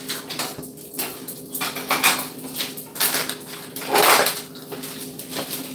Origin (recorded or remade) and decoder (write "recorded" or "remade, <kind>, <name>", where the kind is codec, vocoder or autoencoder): recorded